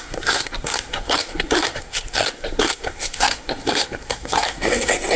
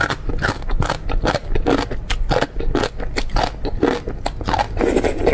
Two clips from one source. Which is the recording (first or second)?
second